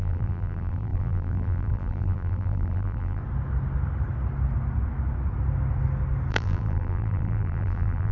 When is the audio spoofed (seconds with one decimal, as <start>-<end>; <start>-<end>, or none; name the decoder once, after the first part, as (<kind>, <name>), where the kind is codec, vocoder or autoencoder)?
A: 0.0-3.2 (vocoder, BigVGAN v2); 6.3-8.1